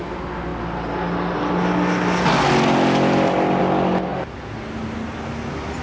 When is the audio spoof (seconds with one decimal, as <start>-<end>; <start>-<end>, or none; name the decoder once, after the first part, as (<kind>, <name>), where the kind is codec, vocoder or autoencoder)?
none